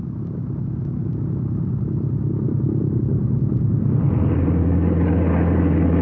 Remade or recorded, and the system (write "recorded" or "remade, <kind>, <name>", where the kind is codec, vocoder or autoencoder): recorded